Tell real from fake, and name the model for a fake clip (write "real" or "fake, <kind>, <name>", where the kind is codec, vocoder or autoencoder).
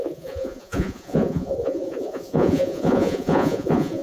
fake, vocoder, Vocos